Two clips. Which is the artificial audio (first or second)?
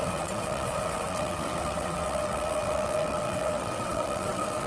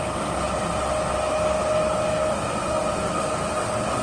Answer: first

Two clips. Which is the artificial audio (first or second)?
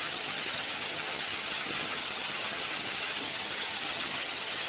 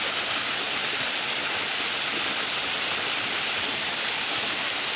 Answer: first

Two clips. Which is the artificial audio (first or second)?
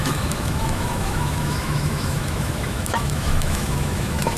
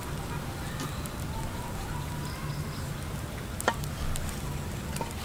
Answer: first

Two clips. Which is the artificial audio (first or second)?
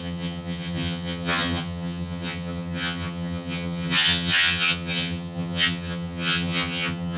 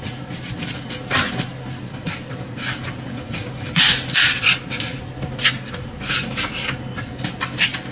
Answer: first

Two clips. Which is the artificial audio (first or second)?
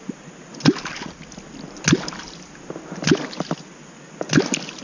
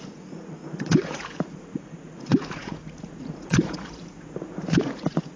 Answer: second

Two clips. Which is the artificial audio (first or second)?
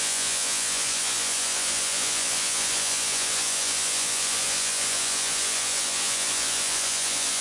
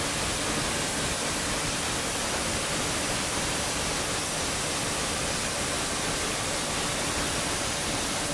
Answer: first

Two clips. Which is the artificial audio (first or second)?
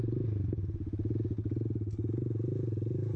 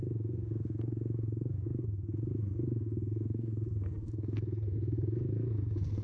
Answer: second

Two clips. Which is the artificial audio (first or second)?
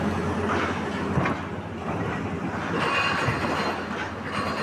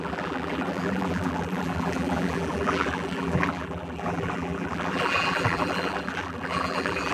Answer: second